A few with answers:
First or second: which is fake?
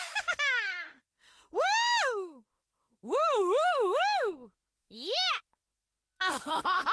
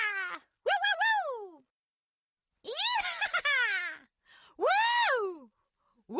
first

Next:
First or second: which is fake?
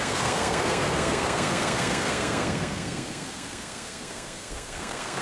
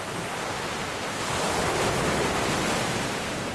first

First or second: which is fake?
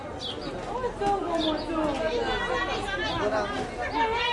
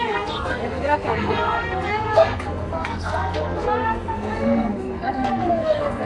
second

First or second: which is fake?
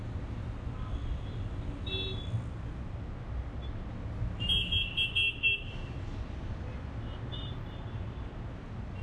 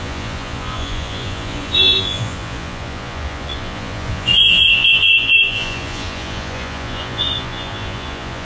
second